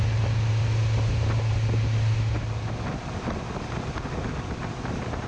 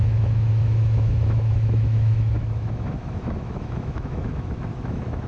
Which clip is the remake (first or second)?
second